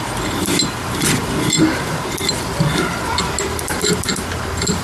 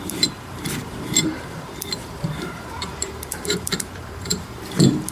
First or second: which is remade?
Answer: second